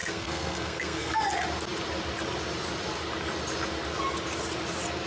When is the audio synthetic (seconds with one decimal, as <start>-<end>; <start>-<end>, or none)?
0.0-1.2